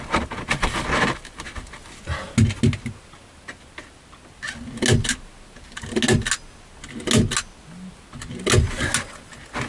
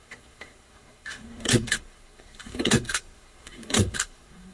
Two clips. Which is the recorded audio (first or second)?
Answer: first